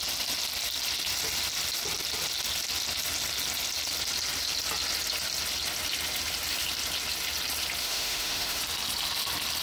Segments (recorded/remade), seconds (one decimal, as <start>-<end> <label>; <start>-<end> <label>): 0.0-7.8 recorded; 7.8-8.6 remade; 8.6-9.6 recorded

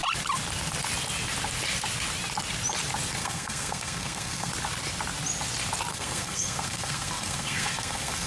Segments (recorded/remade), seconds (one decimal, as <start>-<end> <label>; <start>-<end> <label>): 0.0-3.2 recorded; 3.2-4.5 remade; 4.5-5.9 recorded; 5.9-8.3 remade

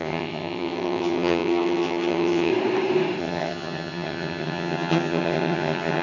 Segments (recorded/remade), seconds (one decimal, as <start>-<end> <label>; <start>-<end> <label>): 0.0-2.5 remade; 2.5-3.2 recorded; 3.2-6.0 remade

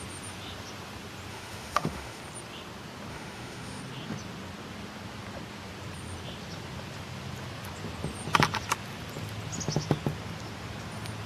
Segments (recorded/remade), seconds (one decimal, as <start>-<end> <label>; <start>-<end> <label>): 0.0-1.3 recorded; 1.3-2.2 remade; 2.2-3.1 recorded; 3.1-3.8 remade; 3.8-11.3 recorded